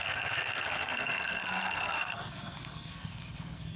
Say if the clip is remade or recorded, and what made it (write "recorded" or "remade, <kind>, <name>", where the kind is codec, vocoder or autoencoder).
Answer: remade, codec, SNAC